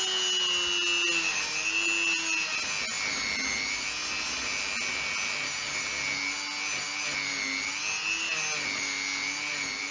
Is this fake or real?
real